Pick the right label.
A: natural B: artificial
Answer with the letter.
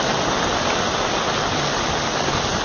B